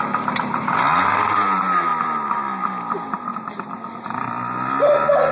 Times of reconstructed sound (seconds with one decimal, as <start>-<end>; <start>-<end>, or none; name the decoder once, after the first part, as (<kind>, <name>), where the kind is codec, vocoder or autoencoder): none